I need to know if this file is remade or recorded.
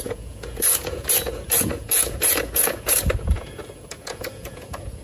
remade